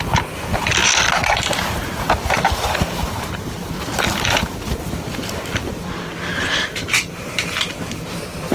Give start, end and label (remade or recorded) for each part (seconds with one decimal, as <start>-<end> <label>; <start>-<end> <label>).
0.0-6.3 recorded; 6.3-7.8 remade; 7.8-8.5 recorded